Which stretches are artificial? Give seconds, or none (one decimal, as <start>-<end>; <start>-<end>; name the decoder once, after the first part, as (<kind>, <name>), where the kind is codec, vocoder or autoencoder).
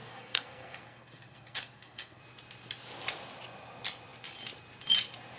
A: 0.0-2.2 (codec, SNAC)